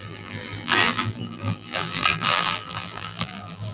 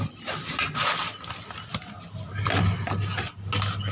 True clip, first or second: second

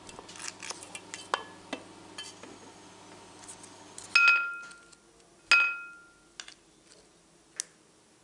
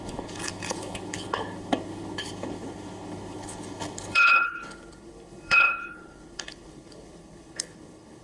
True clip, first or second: first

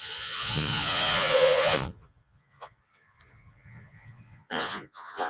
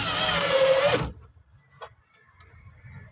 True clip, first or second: second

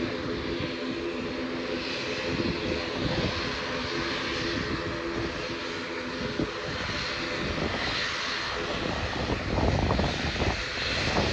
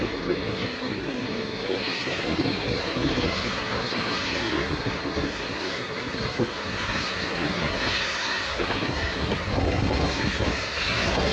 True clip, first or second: first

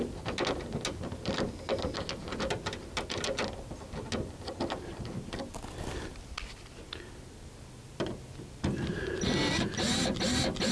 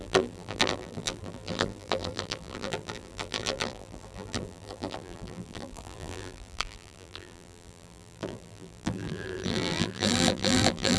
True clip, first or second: first